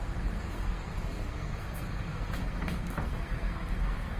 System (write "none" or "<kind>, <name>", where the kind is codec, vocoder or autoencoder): codec, SNAC